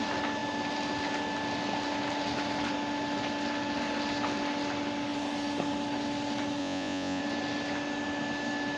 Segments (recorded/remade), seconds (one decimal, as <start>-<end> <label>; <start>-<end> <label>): 0.0-6.6 recorded; 6.6-7.2 remade; 7.2-8.8 recorded